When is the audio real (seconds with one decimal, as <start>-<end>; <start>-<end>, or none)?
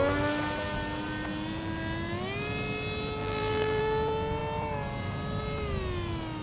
0.0-3.2; 3.8-6.4